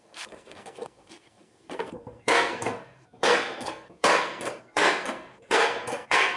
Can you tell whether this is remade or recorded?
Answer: remade